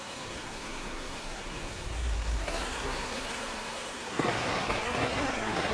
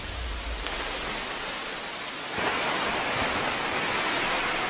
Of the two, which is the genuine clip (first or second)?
second